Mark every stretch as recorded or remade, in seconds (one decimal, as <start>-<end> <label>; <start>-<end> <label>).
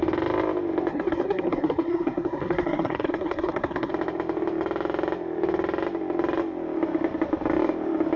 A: 0.0-0.9 recorded; 0.9-3.9 remade; 3.9-8.2 recorded